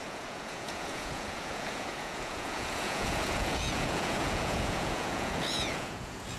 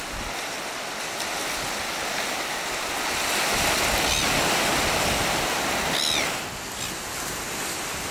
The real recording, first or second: second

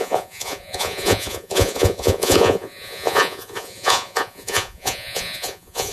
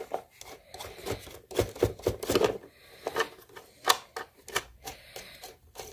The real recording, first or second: second